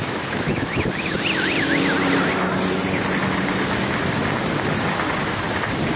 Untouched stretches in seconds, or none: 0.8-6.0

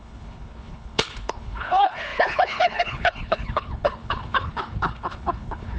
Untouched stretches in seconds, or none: none

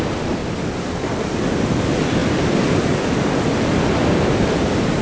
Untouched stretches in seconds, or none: 0.4-0.9

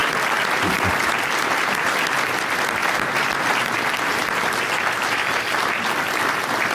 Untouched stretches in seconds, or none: 0.0-0.9; 4.1-5.9

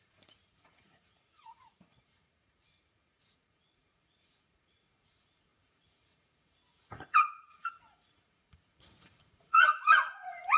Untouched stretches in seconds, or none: none

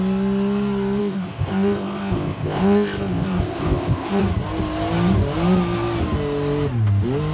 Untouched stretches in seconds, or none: 0.0-1.0; 4.2-7.3

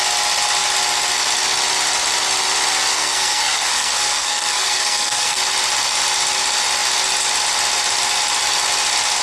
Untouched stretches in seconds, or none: 0.0-2.9; 5.4-9.2